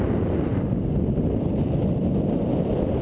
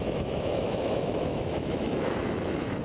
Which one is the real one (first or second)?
first